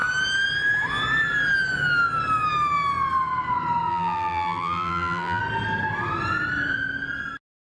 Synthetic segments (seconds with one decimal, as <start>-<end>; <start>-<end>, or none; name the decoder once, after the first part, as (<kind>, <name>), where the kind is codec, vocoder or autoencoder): 3.9-5.4 (vocoder, BigVGAN v2)